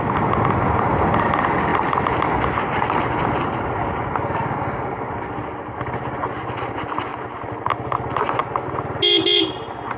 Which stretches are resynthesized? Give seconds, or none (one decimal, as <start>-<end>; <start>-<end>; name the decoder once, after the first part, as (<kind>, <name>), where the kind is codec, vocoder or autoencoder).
none